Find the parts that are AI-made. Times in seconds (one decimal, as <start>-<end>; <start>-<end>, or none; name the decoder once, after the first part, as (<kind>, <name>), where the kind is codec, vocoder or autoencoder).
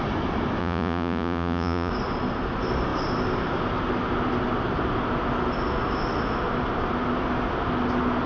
0.6-1.9 (vocoder, Vocos)